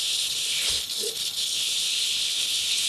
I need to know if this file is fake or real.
fake